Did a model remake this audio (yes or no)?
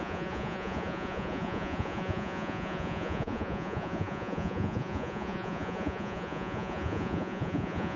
yes